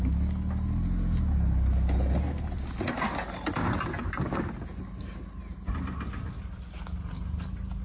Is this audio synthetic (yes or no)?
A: no